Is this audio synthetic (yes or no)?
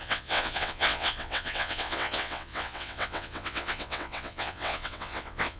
yes